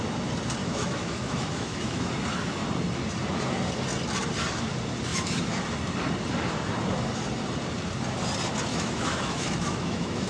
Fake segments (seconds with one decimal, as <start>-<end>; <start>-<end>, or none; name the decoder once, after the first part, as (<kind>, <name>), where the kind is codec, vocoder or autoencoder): 0.6-2.1 (autoencoder, DAC-VAE); 5.1-5.6; 8.7-10.3